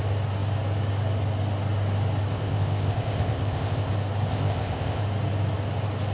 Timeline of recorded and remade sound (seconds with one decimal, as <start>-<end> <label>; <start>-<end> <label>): 0.0-2.3 recorded; 2.3-3.9 remade; 3.9-4.3 recorded; 4.3-5.0 remade; 5.0-6.1 recorded